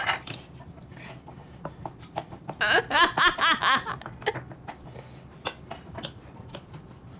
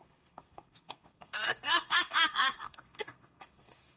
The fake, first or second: second